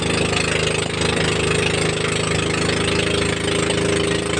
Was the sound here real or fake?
real